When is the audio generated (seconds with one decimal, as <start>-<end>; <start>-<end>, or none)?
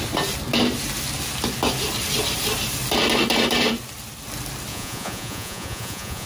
4.7-6.3